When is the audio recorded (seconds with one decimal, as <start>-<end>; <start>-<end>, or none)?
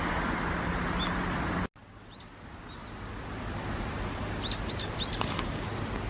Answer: 0.0-6.1